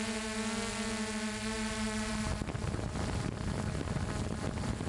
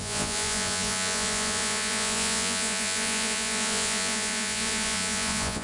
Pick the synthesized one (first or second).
second